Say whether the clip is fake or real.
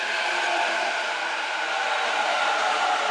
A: real